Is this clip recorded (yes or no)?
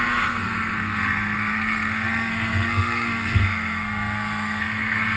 no